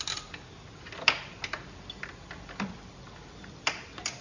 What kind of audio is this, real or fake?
real